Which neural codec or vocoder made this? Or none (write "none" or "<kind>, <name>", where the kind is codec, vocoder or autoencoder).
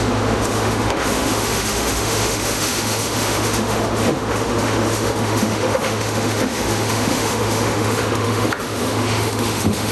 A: autoencoder, DAC-VAE